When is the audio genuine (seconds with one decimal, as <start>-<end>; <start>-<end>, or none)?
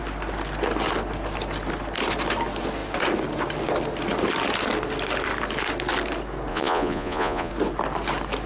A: 0.0-6.5; 7.5-8.5